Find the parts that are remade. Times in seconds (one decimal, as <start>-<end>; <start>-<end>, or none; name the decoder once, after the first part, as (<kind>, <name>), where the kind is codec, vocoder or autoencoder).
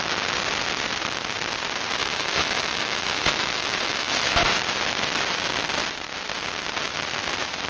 2.0-4.4 (autoencoder, DAC-VAE)